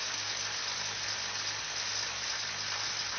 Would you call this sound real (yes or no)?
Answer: yes